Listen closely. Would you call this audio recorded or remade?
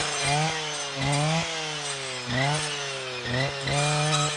recorded